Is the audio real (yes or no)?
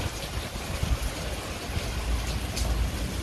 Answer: yes